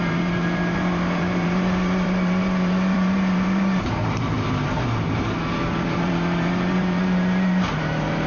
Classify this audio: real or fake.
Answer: fake